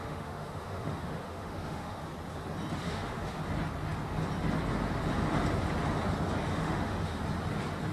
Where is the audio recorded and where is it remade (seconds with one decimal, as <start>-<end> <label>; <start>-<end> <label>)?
0.0-2.0 remade; 2.0-2.8 recorded; 2.8-3.4 remade; 3.4-6.5 recorded; 6.5-7.2 remade; 7.2-7.9 recorded